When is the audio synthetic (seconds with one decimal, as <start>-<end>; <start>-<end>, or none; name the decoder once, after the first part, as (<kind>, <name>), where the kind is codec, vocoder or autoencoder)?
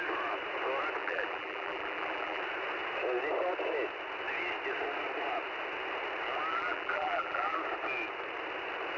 1.0-2.4 (vocoder, BigVGAN v2); 6.5-7.6